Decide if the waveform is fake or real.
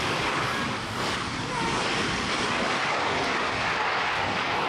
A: fake